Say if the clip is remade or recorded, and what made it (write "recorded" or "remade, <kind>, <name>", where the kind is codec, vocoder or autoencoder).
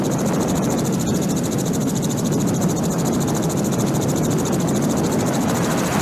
recorded